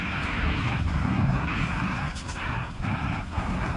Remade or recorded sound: remade